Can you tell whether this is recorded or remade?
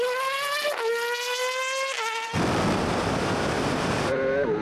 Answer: recorded